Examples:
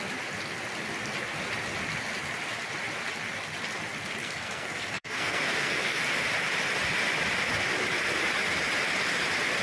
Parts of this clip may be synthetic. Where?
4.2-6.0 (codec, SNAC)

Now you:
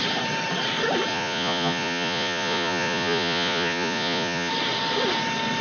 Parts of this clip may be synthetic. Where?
1.1-4.5 (vocoder, Vocos)

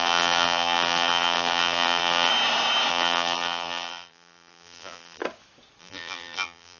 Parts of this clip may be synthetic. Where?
0.0-2.3 (vocoder, BigVGAN v2); 2.9-5.2; 5.8-6.8

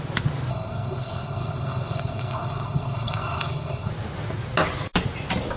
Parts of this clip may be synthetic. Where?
0.5-3.9 (codec, SNAC)

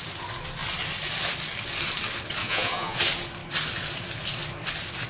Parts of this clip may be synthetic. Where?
2.4-3.0 (vocoder, Vocos)

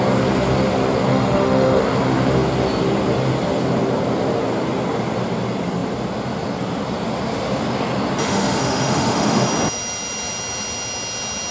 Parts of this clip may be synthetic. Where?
1.1-1.8 (autoencoder, DAC-VAE); 8.2-9.5